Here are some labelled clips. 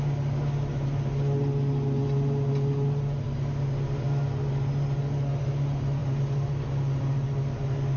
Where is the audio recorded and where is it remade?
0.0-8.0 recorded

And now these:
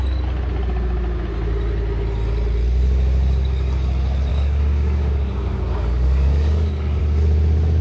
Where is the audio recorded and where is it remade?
0.0-4.3 recorded; 4.3-7.0 remade; 7.0-7.8 recorded

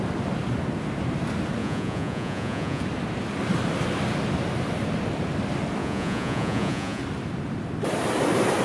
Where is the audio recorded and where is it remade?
0.0-1.6 recorded; 1.6-2.8 remade; 2.8-5.8 recorded; 5.8-7.0 remade; 7.0-8.6 recorded

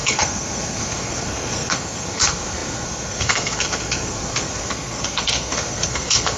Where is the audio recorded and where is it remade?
0.0-6.4 remade

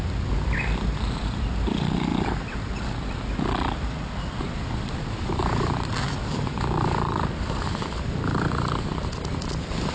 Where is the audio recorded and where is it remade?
0.0-2.1 remade; 2.1-4.4 recorded; 4.4-9.9 remade

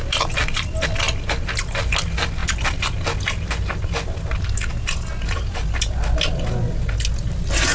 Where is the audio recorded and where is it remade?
0.0-7.7 recorded

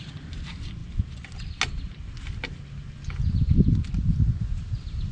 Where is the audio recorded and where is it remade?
0.0-5.1 recorded

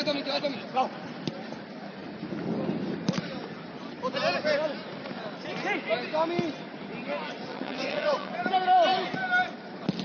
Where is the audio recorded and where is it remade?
0.0-7.5 recorded; 7.5-8.3 remade; 8.3-10.0 recorded